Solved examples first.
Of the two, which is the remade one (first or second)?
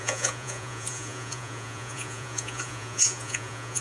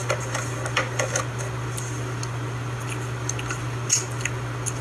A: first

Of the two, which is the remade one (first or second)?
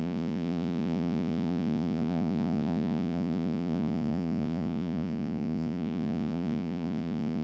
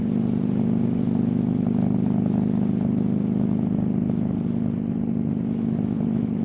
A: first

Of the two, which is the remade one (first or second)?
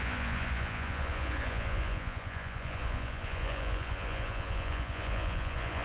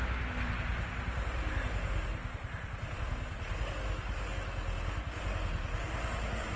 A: first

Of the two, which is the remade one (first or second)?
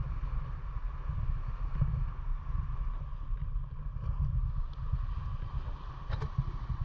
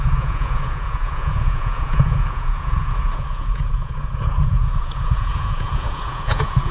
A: second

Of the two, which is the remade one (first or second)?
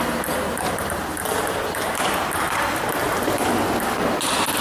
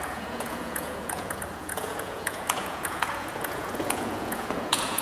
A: second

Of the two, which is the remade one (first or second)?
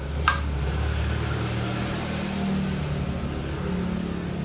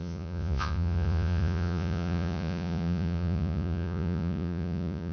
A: second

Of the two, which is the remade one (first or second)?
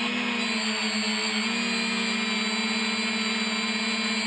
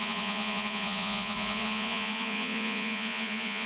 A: second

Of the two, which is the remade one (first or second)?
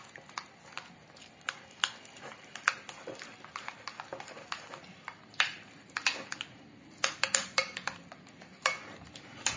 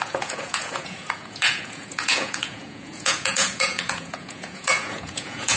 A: second